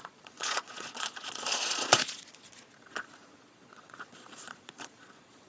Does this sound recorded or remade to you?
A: remade